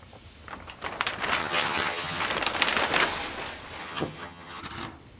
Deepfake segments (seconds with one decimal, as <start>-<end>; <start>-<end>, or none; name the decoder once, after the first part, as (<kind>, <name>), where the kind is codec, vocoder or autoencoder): 1.4-2.2 (vocoder, HiFi-GAN); 3.8-4.6